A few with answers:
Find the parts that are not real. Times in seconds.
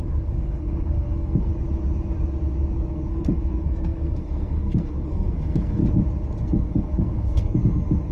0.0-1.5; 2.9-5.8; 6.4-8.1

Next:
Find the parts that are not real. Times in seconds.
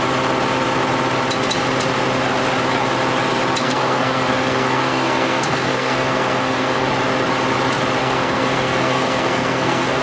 3.6-6.9; 8.0-10.0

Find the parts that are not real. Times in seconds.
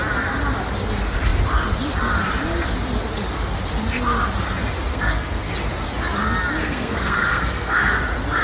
4.9-5.5; 6.6-8.0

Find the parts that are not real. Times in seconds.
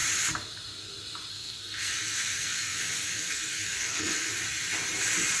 1.3-4.3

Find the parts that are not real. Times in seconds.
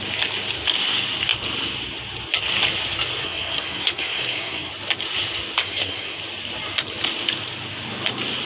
3.2-4.7; 5.6-6.2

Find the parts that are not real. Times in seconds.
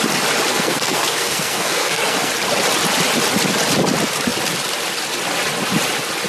0.5-2.3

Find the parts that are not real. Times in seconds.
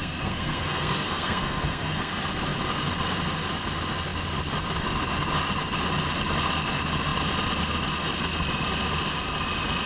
0.0-2.1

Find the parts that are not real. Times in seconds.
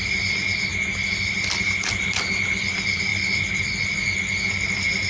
none